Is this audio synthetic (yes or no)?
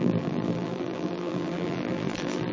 yes